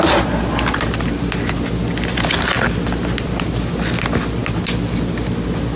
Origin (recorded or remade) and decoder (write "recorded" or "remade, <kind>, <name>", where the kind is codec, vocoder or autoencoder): recorded